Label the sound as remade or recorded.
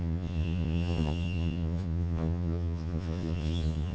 remade